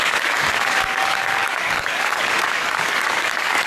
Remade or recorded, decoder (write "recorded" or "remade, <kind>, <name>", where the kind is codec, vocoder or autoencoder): remade, codec, DAC